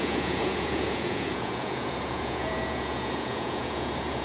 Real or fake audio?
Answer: fake